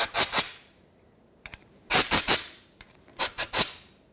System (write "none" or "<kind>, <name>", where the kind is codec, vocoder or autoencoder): vocoder, BigVGAN v2